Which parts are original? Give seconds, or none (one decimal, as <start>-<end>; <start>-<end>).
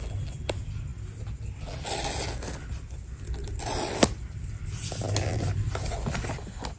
0.0-6.8